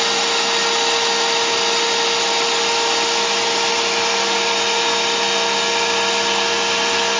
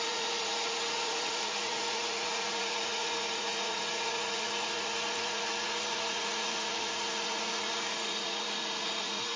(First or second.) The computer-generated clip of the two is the second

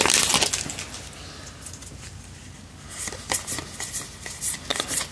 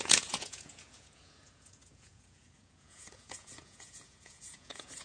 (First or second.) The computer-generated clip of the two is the second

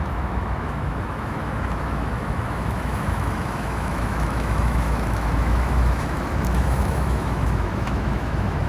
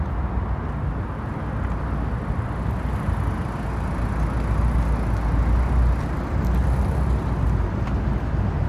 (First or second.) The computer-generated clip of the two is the first